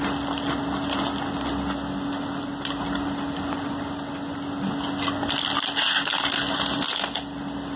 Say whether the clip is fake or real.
real